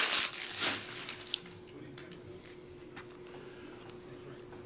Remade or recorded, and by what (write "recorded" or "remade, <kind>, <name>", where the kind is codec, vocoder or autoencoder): recorded